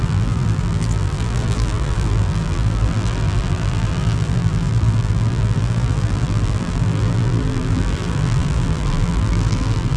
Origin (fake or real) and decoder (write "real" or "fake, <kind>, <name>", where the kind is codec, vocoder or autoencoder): fake, vocoder, BigVGAN v2